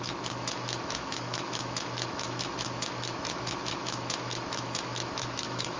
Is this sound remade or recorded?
remade